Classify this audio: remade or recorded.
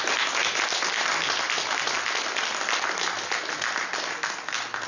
recorded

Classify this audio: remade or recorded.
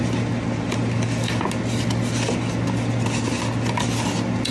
recorded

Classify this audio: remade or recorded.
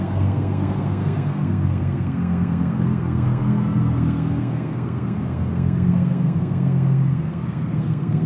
remade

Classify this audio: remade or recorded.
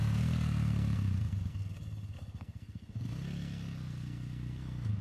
remade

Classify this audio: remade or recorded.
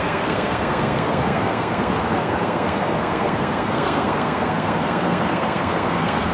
remade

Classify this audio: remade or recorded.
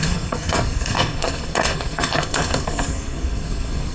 remade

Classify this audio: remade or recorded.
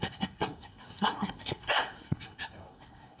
remade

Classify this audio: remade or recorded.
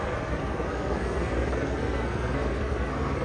remade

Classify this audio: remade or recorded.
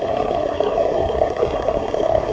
remade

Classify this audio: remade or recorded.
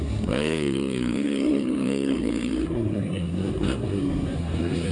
remade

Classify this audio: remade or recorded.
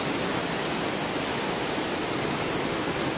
recorded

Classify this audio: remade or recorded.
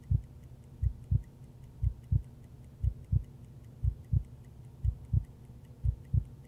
recorded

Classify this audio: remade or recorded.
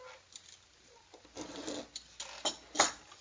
recorded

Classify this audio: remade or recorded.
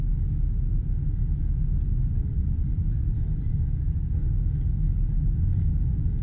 recorded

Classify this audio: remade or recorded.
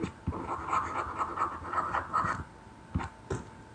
recorded